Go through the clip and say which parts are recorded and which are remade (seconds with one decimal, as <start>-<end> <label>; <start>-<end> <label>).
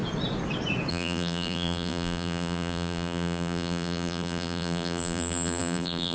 0.0-0.9 recorded; 0.9-6.1 remade